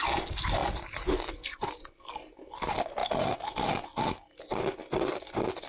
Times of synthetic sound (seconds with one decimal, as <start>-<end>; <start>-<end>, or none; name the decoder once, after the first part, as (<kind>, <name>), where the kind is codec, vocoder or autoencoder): none